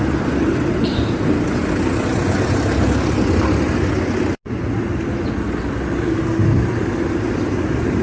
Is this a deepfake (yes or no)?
no